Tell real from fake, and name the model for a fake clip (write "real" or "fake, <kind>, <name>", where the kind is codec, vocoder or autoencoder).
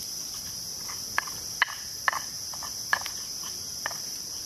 real